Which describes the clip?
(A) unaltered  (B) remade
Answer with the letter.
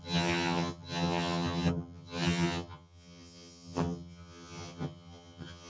B